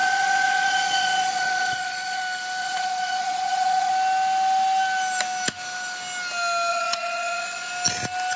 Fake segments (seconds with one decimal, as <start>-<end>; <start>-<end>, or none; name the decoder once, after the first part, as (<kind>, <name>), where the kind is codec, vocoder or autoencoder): 0.0-2.2 (vocoder, Vocos); 2.6-3.9; 6.7-7.7